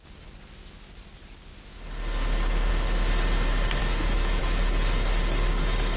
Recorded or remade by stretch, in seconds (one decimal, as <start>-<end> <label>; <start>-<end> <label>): 0.0-3.8 recorded; 3.8-4.4 remade; 4.4-6.0 recorded